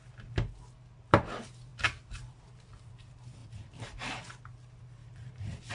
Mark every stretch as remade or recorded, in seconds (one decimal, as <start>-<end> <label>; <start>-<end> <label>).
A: 0.0-5.0 recorded; 5.0-5.7 remade